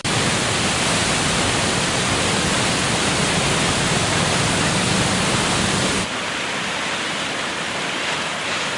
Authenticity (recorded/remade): remade